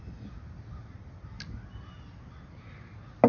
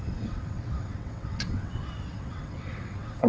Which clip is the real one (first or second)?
first